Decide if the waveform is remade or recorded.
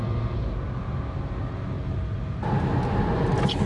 recorded